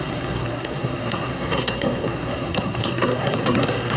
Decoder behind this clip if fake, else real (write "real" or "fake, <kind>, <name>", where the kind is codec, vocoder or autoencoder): fake, codec, SNAC